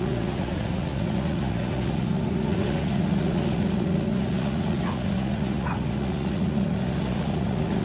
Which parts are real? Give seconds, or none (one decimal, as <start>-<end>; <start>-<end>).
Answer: none